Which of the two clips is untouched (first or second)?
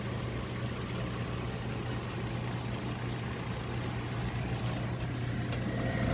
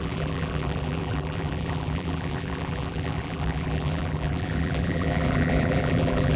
first